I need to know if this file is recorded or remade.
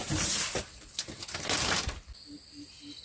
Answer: recorded